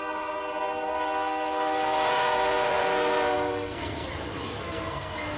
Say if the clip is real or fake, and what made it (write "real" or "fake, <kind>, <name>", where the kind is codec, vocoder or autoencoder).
fake, codec, SNAC